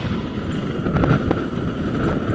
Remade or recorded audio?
recorded